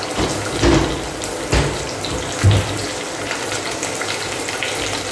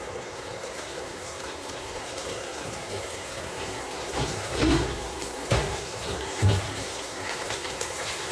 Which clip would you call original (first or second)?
first